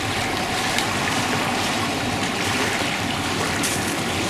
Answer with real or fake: fake